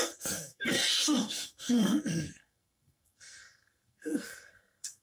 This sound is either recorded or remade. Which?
remade